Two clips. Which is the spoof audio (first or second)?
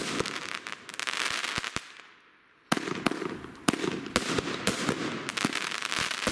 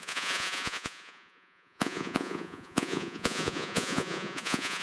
second